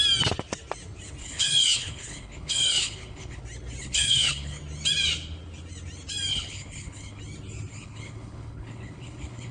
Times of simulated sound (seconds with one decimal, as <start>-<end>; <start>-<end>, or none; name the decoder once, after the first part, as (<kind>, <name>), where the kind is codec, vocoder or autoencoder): 1.2-3.4 (codec, HILCodec); 3.8-4.6; 6.3-7.2; 7.7-9.5